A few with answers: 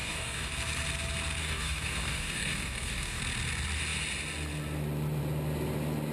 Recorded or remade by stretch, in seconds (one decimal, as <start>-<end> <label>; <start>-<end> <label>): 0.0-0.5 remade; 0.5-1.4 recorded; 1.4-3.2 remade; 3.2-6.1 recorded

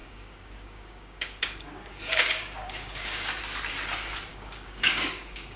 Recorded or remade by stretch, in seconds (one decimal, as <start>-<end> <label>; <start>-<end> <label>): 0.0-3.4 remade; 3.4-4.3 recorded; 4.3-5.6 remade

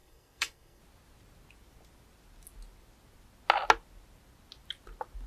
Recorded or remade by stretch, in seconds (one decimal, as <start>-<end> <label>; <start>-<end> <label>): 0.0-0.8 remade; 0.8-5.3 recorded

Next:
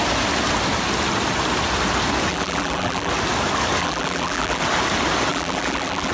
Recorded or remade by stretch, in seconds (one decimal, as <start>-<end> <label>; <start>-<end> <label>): 0.0-2.3 recorded; 2.3-3.1 remade; 3.1-3.8 recorded; 3.8-4.6 remade; 4.6-5.3 recorded; 5.3-6.1 remade

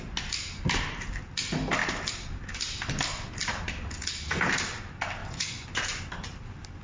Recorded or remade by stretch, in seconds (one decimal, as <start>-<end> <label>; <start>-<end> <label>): 0.0-5.2 recorded; 5.2-6.0 remade; 6.0-6.8 recorded

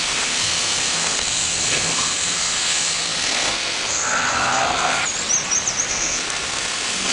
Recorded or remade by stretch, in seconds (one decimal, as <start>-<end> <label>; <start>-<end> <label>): 0.0-5.0 remade; 5.0-5.9 recorded; 5.9-7.1 remade

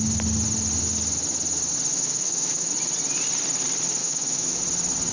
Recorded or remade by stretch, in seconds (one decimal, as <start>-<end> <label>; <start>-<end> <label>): 0.0-1.9 recorded; 1.9-2.7 remade; 2.7-4.0 recorded; 4.0-4.6 remade; 4.6-5.1 recorded

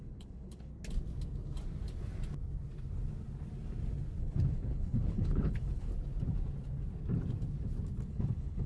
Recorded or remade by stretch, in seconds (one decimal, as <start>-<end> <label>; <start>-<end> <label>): 0.0-0.7 remade; 0.7-4.2 recorded; 4.2-5.9 remade; 5.9-8.1 recorded; 8.1-8.7 remade